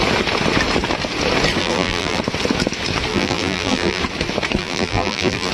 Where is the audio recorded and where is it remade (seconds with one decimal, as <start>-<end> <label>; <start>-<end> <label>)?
0.0-1.6 recorded; 1.6-2.2 remade; 2.2-3.1 recorded; 3.1-4.0 remade; 4.0-4.6 recorded; 4.6-5.5 remade